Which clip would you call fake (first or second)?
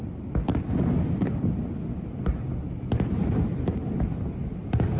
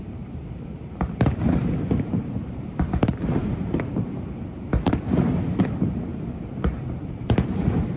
second